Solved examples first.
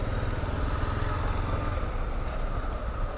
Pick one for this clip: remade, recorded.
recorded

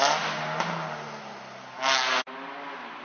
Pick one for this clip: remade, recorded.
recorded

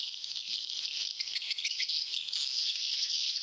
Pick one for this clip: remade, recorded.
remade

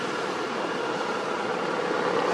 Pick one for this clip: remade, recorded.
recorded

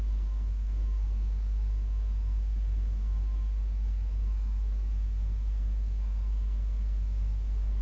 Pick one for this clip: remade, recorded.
remade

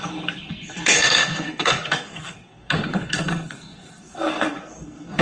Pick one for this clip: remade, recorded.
remade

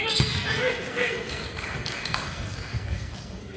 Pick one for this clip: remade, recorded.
remade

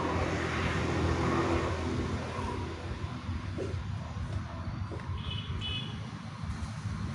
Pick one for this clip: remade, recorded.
recorded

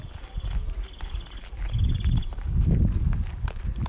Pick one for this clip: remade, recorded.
recorded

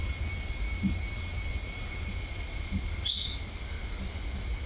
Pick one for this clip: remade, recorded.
recorded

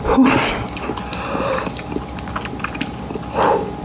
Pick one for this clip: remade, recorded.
recorded